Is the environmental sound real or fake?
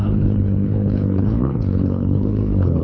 fake